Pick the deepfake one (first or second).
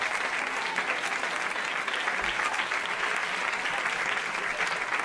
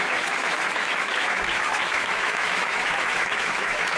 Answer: second